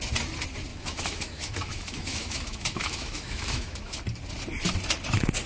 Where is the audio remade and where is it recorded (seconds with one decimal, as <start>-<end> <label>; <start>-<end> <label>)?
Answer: 0.0-0.7 recorded; 0.7-4.0 remade; 4.0-5.5 recorded